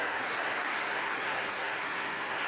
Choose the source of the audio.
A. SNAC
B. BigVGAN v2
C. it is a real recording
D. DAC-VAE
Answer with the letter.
A